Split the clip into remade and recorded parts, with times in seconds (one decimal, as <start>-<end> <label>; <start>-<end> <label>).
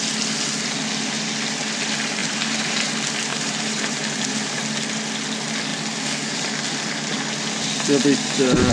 0.0-2.2 recorded; 2.2-2.9 remade; 2.9-3.3 recorded; 3.3-4.6 remade; 4.6-8.7 recorded